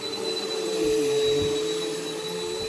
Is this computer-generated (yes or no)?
no